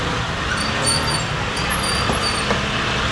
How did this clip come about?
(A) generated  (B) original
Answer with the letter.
B